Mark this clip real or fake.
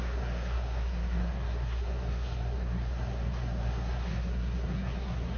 fake